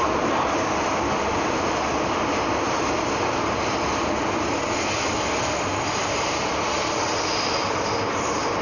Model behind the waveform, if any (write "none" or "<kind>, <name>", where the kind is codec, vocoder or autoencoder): none